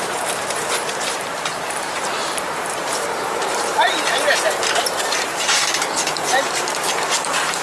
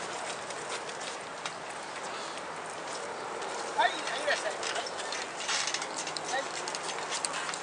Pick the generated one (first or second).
first